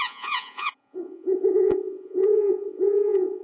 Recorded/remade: remade